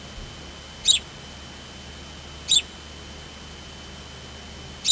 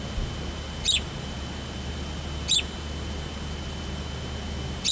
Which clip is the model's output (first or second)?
second